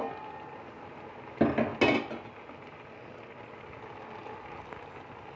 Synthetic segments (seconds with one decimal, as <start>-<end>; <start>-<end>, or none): none